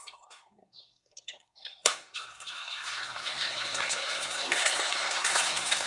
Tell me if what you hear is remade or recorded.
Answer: remade